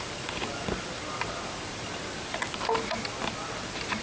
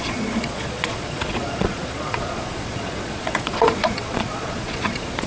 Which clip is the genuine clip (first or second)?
first